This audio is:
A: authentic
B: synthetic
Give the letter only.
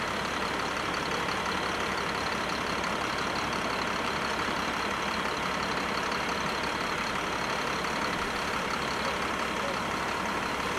A